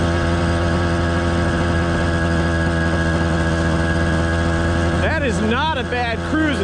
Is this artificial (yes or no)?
no